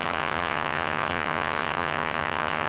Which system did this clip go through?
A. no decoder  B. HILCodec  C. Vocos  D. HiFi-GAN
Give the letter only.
D